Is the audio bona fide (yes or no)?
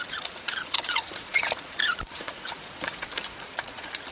no